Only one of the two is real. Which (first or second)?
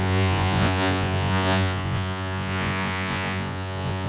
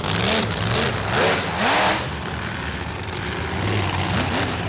second